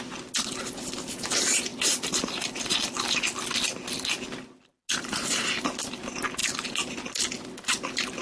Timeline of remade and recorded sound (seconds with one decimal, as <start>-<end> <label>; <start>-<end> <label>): 0.0-8.2 recorded